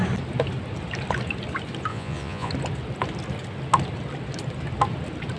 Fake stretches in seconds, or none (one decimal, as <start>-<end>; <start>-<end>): 1.9-2.5